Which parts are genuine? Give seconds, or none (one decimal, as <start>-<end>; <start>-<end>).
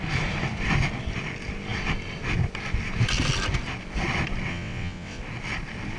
0.0-4.5; 5.2-6.0